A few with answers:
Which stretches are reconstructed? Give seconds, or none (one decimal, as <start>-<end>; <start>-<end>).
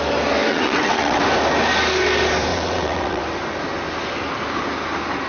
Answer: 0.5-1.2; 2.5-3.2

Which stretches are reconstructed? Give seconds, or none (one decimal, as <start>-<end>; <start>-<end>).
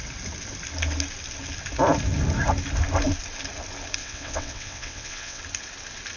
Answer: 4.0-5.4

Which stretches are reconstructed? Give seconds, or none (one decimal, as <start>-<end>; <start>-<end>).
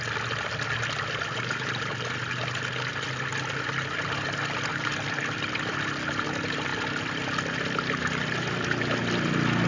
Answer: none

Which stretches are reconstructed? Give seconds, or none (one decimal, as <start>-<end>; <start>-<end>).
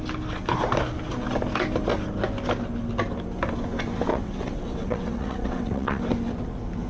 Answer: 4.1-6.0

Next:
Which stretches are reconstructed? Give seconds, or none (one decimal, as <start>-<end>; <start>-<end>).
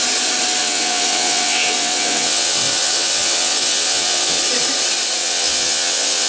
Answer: 0.6-4.4; 5.2-6.3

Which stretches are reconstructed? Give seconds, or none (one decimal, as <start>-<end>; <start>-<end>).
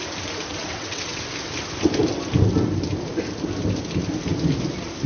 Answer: 0.5-1.2